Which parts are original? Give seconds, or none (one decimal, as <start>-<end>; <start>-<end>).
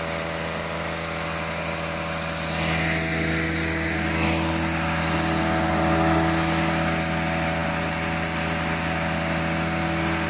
0.0-10.3